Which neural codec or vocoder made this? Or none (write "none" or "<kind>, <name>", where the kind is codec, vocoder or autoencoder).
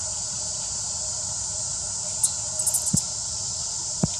none